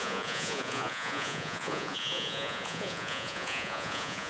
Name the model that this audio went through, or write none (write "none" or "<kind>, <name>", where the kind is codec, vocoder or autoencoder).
vocoder, Vocos